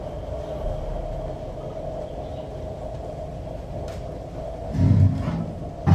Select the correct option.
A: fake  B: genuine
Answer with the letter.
B